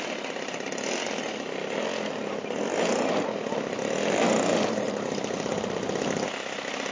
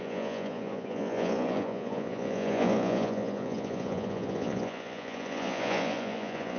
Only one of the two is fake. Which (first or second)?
second